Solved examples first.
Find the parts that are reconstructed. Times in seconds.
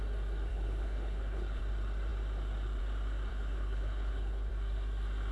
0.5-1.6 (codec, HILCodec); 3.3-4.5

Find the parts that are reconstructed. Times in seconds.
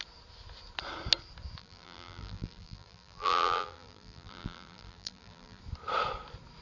1.6-5.6 (vocoder, BigVGAN v2)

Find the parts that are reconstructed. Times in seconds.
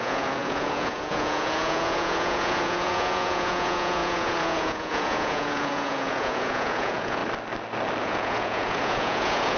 0.0-7.2 (vocoder, Vocos); 8.0-9.6